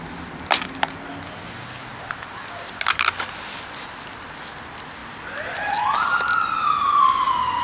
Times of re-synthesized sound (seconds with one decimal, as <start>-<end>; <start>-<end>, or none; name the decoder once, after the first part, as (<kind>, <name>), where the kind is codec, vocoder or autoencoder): none